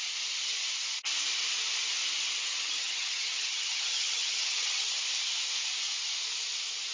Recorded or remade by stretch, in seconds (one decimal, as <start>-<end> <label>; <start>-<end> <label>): 0.0-2.5 recorded; 2.5-5.0 remade; 5.0-6.9 recorded